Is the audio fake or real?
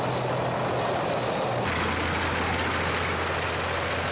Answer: real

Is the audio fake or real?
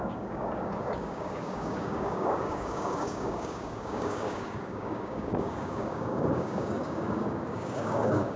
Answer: fake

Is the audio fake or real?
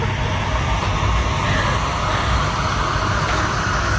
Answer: real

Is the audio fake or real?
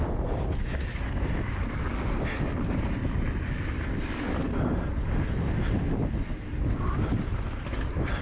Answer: real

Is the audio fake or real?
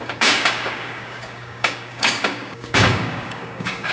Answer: fake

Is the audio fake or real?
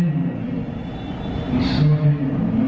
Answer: real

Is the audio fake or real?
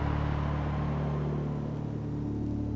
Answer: real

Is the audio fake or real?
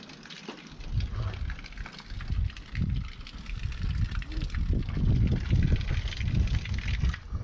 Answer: real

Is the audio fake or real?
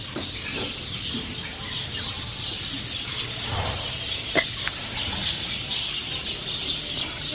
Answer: real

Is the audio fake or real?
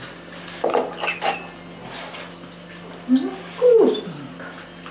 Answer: real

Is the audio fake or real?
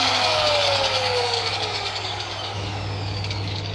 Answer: fake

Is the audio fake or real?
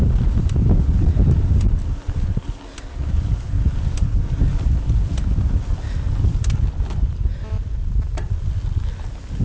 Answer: real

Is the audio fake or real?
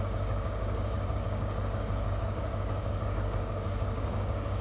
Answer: fake